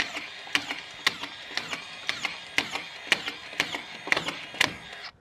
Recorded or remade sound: recorded